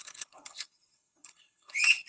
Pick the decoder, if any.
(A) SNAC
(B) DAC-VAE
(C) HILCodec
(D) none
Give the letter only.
C